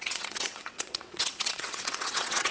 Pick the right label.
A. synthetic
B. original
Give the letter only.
A